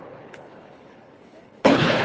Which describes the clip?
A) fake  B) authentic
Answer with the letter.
A